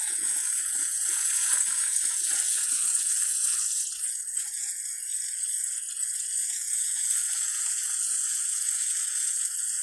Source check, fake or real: fake